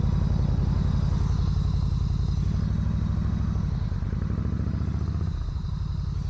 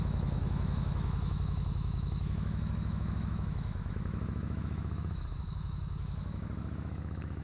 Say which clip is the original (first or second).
first